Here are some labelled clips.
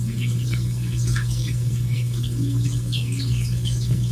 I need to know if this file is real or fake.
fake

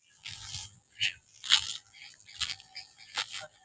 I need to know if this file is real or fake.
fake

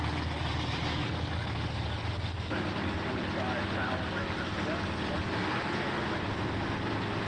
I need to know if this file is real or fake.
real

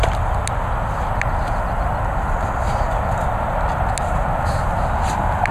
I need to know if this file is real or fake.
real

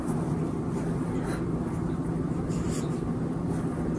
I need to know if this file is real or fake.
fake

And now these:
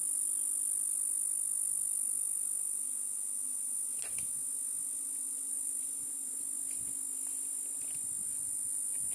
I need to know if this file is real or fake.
real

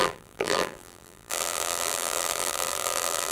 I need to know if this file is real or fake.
fake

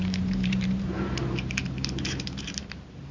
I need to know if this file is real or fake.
fake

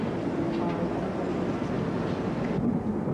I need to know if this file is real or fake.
real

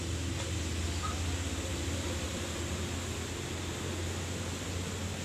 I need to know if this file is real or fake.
real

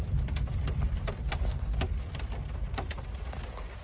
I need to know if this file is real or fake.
real